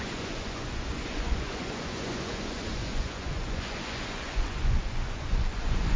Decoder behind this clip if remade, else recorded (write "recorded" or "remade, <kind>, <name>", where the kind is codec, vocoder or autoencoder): remade, vocoder, Vocos